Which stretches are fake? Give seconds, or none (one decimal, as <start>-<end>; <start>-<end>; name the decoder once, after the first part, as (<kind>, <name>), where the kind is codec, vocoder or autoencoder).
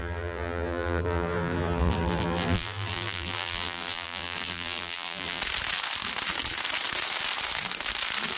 0.0-5.4 (vocoder, BigVGAN v2)